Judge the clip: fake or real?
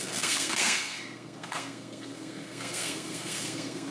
fake